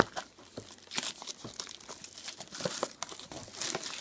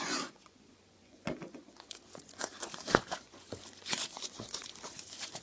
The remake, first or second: second